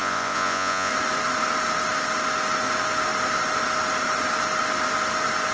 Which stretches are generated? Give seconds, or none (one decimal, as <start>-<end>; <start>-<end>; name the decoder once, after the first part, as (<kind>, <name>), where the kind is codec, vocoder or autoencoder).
0.0-0.9 (vocoder, Vocos)